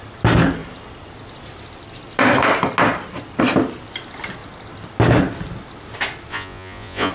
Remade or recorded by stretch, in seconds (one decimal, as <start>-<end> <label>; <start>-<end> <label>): 0.0-6.3 recorded; 6.3-7.1 remade